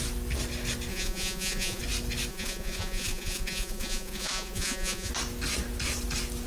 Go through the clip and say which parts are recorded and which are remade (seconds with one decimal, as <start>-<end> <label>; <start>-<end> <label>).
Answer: 0.0-0.9 recorded; 0.9-1.8 remade; 1.8-2.3 recorded; 2.3-5.1 remade; 5.1-6.5 recorded